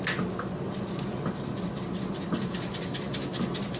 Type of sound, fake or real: real